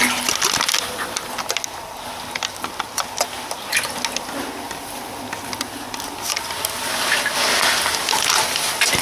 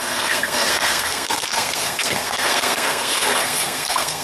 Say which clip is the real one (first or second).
first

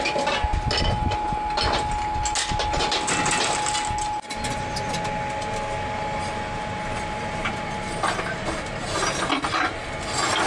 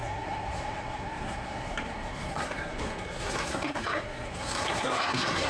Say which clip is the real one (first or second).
first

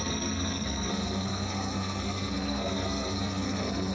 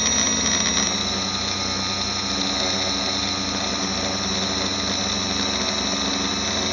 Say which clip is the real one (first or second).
second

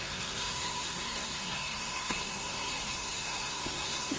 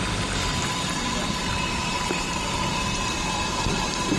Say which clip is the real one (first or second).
second